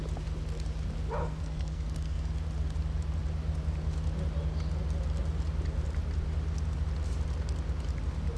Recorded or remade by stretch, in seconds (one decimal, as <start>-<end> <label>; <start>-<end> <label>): 0.0-1.2 recorded; 1.2-2.3 remade; 2.3-8.4 recorded